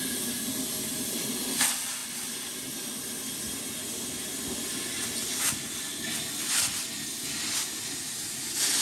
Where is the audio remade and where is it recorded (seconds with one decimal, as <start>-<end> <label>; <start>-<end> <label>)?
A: 0.0-8.8 recorded